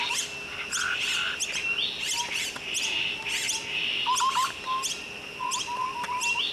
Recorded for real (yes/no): yes